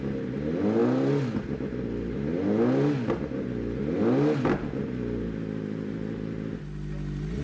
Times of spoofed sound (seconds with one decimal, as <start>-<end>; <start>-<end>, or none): none